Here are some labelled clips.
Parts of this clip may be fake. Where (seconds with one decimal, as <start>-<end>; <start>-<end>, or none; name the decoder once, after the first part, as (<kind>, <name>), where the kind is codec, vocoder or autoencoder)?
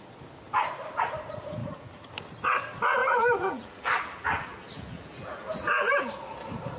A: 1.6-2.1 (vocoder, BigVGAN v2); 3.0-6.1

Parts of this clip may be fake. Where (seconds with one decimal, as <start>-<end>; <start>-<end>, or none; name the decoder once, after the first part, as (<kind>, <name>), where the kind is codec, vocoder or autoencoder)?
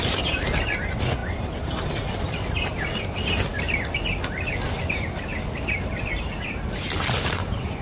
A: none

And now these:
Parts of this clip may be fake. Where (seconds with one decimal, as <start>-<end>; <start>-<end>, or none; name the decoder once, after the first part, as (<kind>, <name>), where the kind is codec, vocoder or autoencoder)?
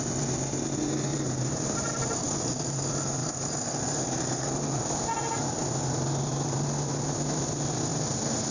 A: 1.1-1.9 (vocoder, BigVGAN v2); 3.2-4.0; 7.9-8.5